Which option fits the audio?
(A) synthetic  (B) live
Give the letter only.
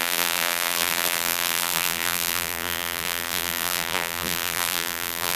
A